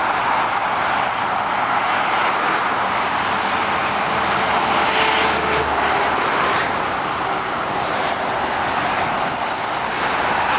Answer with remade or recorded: recorded